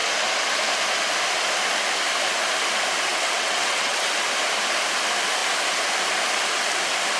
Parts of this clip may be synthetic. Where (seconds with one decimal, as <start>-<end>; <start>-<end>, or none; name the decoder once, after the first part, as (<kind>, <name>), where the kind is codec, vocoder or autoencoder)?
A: 3.1-4.1 (vocoder, WaveNeXt)